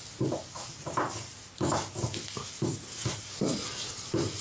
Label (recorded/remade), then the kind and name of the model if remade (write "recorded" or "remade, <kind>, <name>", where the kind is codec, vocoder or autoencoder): recorded